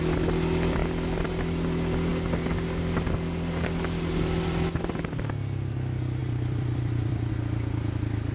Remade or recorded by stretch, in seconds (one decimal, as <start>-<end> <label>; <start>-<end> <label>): 0.0-6.2 recorded; 6.2-7.3 remade; 7.3-8.3 recorded